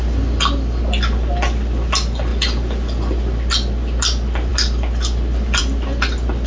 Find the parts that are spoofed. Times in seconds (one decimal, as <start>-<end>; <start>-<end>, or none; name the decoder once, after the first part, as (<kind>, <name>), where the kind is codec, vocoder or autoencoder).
none